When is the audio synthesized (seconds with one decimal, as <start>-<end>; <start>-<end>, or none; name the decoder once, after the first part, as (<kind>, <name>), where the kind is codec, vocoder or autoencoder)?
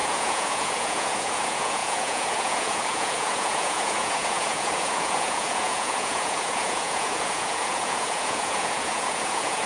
0.0-9.7 (vocoder, Vocos)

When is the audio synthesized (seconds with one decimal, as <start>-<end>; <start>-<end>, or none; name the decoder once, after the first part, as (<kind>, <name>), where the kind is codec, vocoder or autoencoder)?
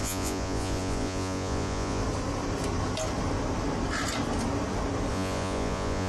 0.0-2.0 (vocoder, Vocos); 5.1-6.1